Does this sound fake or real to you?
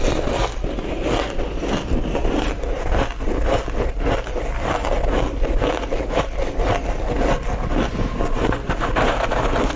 real